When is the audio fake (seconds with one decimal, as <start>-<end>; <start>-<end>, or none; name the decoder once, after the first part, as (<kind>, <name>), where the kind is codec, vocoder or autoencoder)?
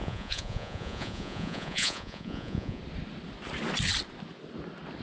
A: 0.0-2.8 (vocoder, Vocos)